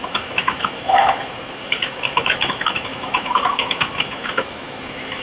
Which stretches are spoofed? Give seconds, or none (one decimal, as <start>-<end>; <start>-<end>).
0.0-5.2